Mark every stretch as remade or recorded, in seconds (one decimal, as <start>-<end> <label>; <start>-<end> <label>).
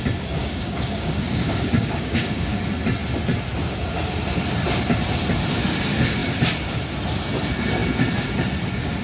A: 0.0-0.4 recorded; 0.4-2.6 remade; 2.6-9.0 recorded